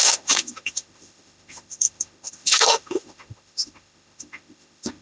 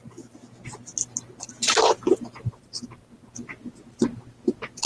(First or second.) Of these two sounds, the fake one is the first